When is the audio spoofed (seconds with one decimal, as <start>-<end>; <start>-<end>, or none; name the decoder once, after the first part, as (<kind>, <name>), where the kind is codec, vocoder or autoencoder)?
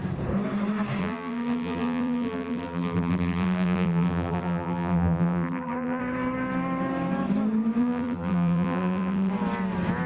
1.0-6.0 (vocoder, BigVGAN v2); 7.8-9.3